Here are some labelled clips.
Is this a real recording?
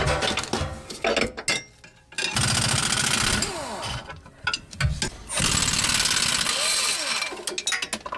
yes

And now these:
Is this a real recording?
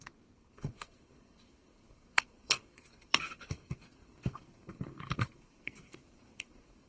no